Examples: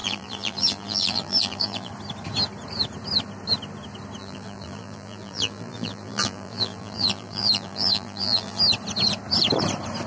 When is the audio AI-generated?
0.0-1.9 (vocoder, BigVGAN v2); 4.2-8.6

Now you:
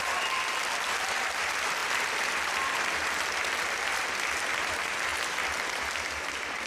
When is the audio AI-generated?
0.0-1.8 (vocoder, BigVGAN v2); 4.6-5.1; 6.0-6.7